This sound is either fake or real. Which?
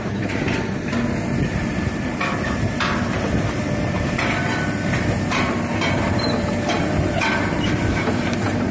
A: fake